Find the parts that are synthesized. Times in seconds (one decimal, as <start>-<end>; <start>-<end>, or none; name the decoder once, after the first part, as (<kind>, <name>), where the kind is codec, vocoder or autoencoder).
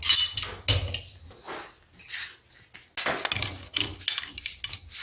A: none